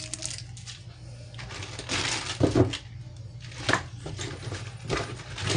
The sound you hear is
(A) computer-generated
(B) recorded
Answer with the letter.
B